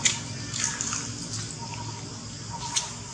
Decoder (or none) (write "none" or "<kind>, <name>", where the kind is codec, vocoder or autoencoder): none